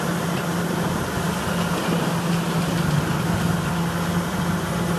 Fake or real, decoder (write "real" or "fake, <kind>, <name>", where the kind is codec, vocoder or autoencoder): real